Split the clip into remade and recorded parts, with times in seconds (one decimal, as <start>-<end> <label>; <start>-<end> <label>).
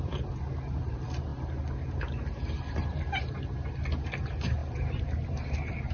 0.0-1.3 remade; 1.3-4.0 recorded; 4.0-5.9 remade